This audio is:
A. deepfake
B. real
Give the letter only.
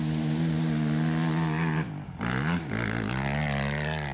B